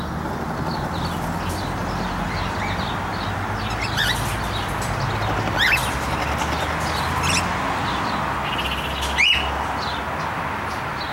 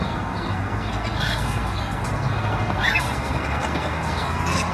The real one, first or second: first